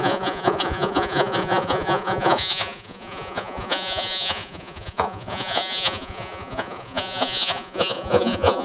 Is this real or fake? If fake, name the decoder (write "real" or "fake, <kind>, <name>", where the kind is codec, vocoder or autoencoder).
fake, vocoder, Vocos